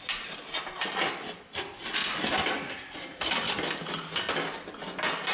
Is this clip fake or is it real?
real